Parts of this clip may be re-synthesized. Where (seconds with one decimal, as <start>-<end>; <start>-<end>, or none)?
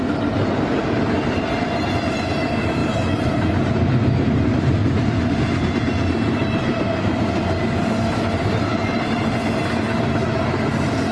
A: none